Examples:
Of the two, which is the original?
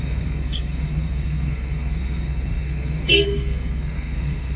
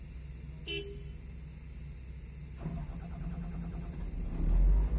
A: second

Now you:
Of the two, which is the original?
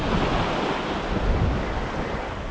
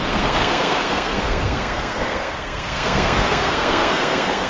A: first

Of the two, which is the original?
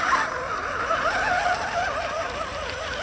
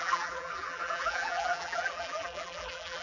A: first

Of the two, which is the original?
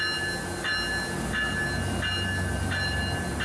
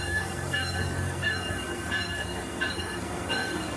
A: first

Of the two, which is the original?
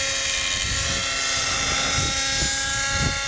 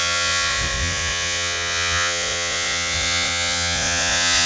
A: first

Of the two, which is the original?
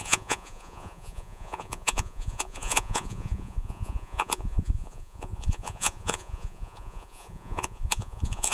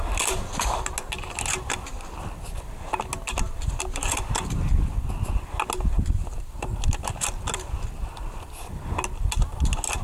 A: second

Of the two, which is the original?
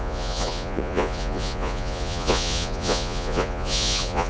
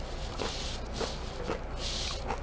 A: second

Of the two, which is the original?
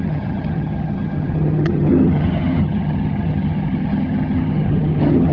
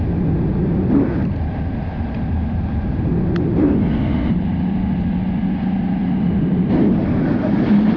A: second